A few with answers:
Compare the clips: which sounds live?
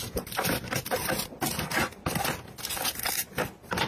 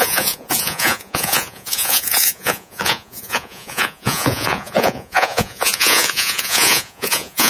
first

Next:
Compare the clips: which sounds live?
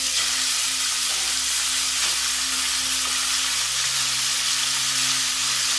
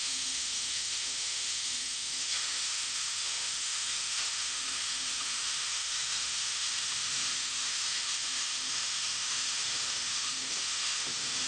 first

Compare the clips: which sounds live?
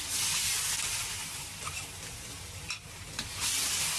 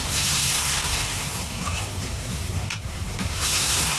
first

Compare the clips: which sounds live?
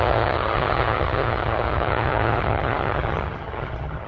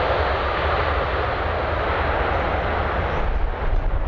second